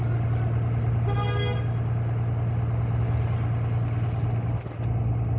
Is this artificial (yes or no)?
no